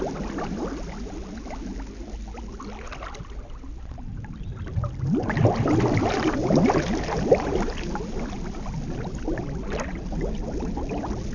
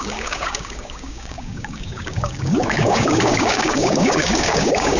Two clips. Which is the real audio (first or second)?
first